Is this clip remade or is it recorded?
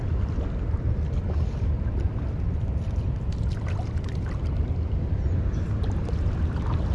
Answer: recorded